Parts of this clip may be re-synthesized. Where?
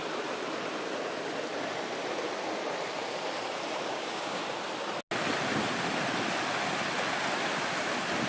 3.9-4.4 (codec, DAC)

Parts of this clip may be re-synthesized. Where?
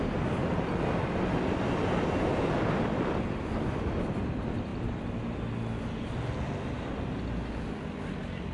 none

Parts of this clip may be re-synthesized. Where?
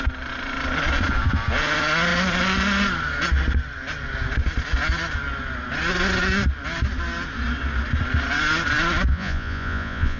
9.1-10.2 (vocoder, Vocos)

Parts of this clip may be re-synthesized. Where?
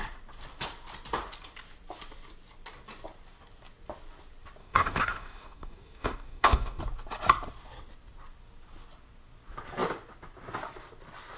4.6-6.8 (codec, DAC)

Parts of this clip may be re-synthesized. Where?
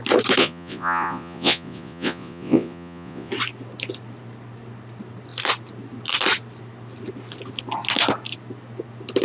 0.4-3.3 (vocoder, Vocos)